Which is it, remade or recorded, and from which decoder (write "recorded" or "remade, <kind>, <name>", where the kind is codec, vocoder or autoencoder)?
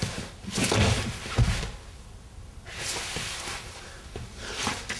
recorded